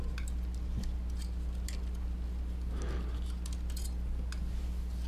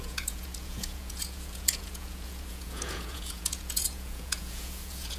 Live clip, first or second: first